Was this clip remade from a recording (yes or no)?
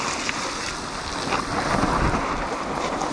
no